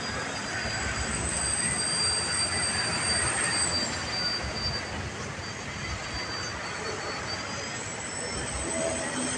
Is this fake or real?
real